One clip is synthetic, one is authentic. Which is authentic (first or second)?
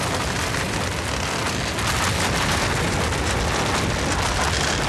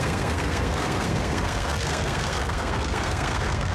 first